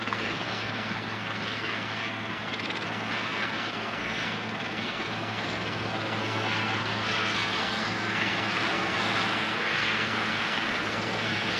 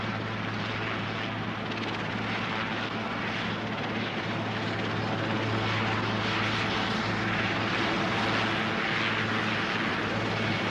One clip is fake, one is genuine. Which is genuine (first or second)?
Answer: second